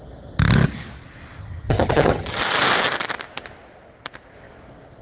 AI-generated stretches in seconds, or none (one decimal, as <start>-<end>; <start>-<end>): 1.4-2.4